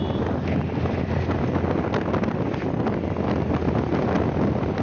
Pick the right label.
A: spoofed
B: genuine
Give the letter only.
B